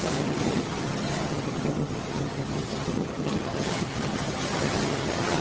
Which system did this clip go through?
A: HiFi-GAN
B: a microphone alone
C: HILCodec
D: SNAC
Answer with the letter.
A